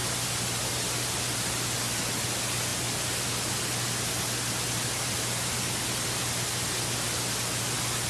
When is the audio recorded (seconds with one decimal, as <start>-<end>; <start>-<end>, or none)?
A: 0.0-8.1